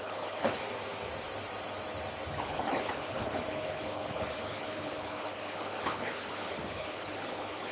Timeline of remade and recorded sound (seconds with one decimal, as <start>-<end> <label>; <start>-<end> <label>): 0.0-0.6 remade; 0.6-2.3 recorded; 2.3-7.7 remade